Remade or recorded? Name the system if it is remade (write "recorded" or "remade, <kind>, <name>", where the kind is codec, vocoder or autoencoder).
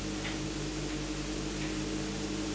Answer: recorded